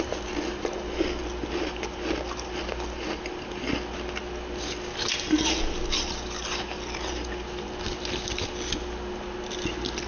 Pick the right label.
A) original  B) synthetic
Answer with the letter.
A